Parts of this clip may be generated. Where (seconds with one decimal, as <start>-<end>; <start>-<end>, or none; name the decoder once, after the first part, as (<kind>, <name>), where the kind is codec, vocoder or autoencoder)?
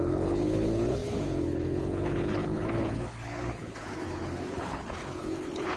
0.0-5.8 (codec, HILCodec)